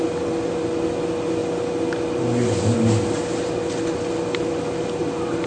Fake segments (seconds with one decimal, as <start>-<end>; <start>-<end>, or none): none